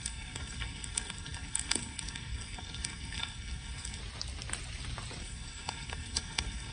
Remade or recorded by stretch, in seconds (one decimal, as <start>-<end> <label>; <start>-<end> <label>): 0.0-4.0 remade; 4.0-5.2 recorded; 5.2-6.7 remade